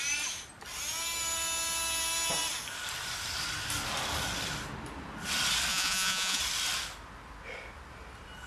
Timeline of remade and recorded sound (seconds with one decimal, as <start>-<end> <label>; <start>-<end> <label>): 0.0-5.7 recorded; 5.7-6.4 remade; 6.4-8.5 recorded